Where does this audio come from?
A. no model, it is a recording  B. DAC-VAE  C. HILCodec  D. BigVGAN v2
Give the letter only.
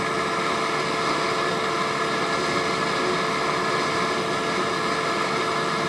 A